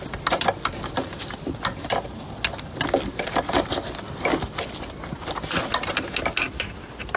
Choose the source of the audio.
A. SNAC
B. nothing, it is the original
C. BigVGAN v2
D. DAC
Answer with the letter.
B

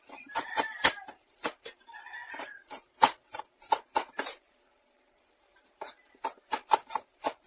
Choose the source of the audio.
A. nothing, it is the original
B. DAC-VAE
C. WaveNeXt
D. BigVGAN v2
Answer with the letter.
D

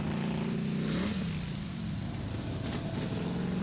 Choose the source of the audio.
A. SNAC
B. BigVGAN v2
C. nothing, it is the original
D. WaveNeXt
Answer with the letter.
C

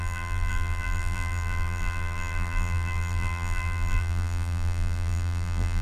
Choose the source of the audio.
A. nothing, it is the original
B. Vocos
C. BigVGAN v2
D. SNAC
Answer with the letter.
C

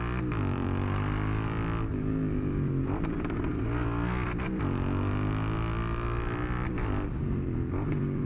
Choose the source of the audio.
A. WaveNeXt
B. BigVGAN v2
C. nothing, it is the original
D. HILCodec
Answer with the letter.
B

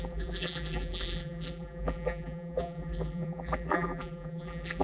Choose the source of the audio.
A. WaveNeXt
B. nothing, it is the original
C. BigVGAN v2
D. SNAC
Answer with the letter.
C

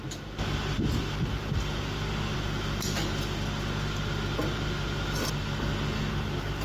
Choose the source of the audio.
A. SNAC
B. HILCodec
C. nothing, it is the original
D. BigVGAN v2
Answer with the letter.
C